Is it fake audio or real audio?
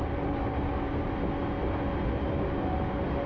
real